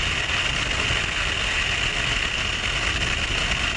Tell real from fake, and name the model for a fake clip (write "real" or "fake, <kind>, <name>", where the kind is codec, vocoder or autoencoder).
real